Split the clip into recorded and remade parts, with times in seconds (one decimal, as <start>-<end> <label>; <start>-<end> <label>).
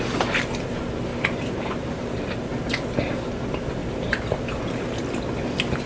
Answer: 0.0-1.1 recorded; 1.1-2.0 remade; 2.0-3.8 recorded; 3.8-4.6 remade; 4.6-5.9 recorded